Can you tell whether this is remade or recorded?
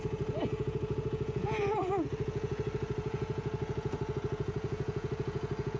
remade